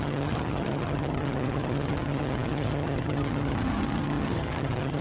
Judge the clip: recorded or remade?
remade